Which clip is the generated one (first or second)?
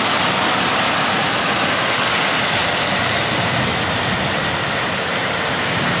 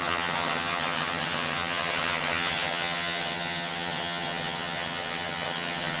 second